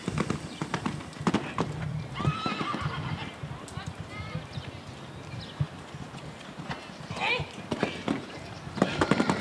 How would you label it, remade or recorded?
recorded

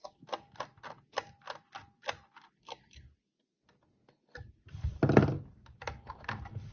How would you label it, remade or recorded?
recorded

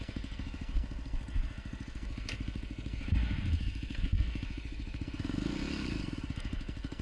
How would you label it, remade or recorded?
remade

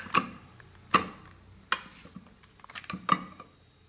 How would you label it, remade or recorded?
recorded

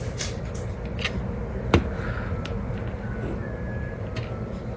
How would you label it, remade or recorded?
recorded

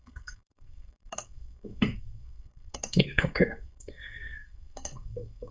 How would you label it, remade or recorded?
remade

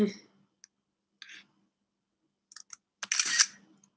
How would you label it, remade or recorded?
recorded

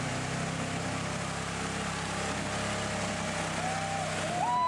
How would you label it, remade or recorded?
recorded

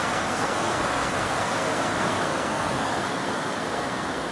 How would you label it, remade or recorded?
remade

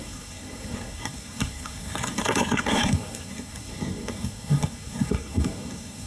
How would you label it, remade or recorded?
remade